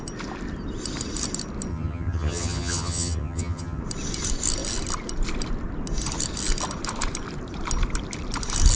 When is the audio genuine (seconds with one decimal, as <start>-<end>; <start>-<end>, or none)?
0.0-1.7; 3.8-8.8

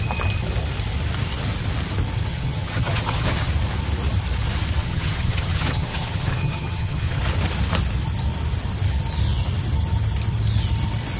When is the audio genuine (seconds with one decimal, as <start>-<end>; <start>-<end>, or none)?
0.0-2.3; 3.5-4.8; 7.2-11.2

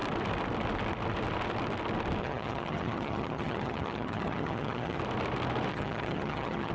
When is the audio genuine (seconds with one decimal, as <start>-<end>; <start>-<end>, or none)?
0.0-2.2; 5.0-5.7

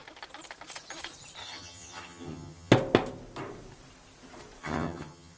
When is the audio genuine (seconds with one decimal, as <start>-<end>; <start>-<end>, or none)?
0.0-1.4; 2.7-4.6